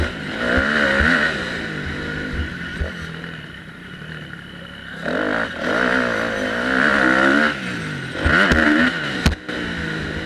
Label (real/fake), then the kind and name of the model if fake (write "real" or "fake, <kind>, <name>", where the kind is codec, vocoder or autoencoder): real